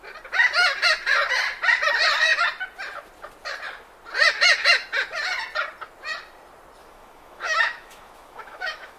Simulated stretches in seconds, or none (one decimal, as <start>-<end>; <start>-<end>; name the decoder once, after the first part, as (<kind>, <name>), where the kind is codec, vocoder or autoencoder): 6.8-9.0 (autoencoder, DAC-VAE)